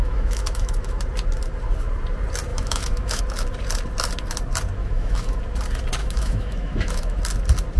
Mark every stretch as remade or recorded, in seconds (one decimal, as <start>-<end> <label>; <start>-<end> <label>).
0.0-1.0 remade; 1.0-2.5 recorded; 2.5-3.2 remade; 3.2-4.8 recorded; 4.8-5.4 remade; 5.4-6.0 recorded; 6.0-7.2 remade; 7.2-7.8 recorded